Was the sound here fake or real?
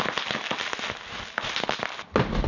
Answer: real